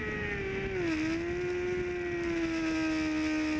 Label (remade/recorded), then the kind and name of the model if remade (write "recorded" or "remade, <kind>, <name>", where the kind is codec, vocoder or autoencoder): recorded